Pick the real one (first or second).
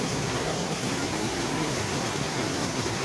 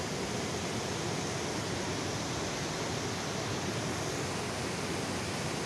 second